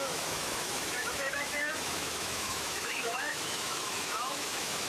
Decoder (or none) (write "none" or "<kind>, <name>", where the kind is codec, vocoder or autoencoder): autoencoder, DAC-VAE